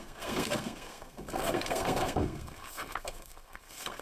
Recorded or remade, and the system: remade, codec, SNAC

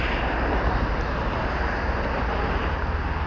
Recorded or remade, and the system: recorded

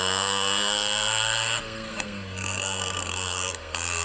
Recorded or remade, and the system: remade, codec, SNAC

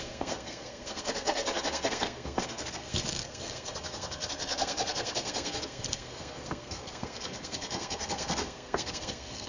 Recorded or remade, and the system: remade, codec, SNAC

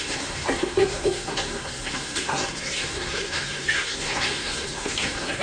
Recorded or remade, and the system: remade, codec, SNAC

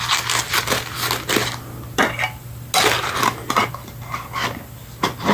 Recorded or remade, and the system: recorded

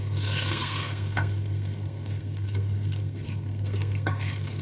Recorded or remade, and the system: remade, codec, SNAC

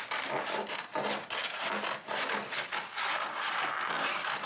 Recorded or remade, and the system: recorded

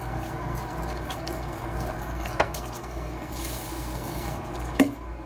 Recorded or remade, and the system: remade, codec, SNAC